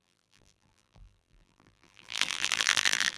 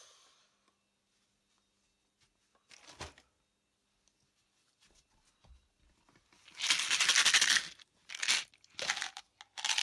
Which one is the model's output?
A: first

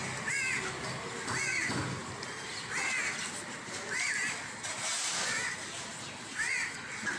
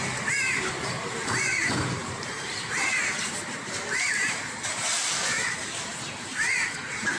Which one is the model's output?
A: second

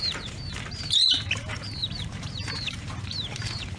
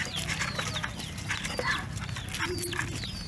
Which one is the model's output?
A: first